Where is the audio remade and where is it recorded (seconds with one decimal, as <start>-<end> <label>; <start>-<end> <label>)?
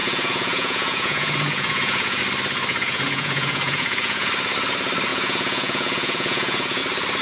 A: 0.0-2.2 remade; 2.2-2.7 recorded; 2.7-4.3 remade; 4.3-5.1 recorded; 5.1-6.8 remade; 6.8-7.2 recorded